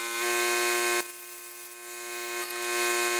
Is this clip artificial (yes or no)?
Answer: no